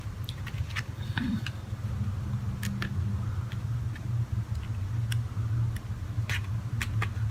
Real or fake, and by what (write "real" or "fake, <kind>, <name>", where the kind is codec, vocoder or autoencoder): real